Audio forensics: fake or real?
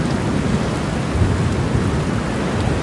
real